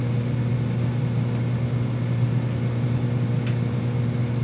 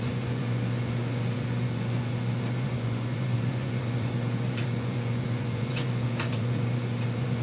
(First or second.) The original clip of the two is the first